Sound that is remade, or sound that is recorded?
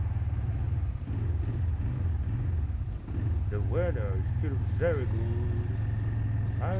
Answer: recorded